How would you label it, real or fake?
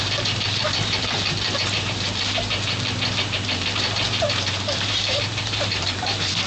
fake